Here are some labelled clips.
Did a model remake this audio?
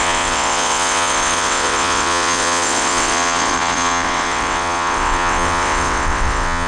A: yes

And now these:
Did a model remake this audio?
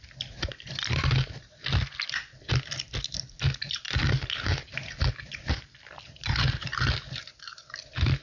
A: no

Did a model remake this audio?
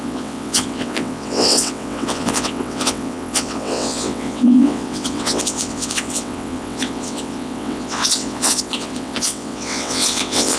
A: yes